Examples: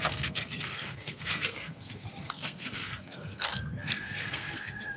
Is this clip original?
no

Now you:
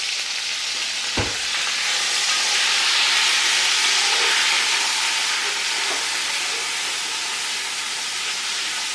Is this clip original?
yes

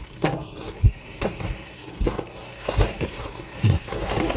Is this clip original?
no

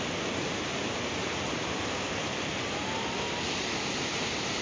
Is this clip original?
yes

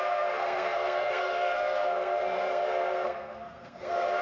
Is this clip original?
no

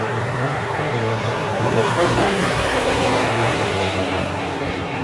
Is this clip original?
no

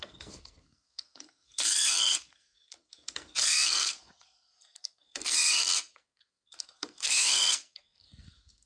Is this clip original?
no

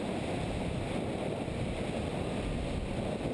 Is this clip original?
yes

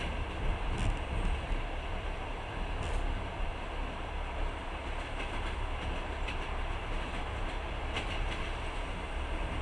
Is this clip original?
yes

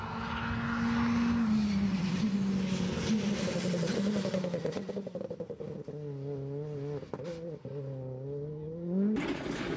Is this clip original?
yes